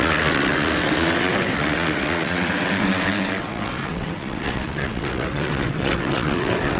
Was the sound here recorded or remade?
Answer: remade